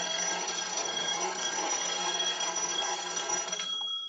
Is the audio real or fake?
fake